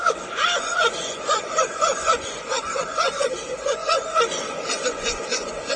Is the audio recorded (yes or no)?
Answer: no